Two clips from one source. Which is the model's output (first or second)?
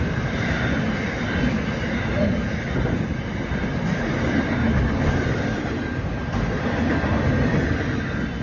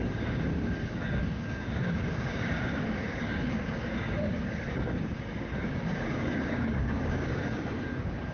second